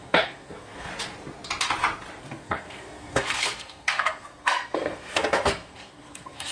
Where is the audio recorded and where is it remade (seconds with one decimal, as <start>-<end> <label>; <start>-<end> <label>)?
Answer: 0.0-0.9 remade; 0.9-2.2 recorded; 2.2-6.5 remade